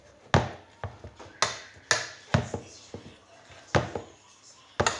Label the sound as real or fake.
real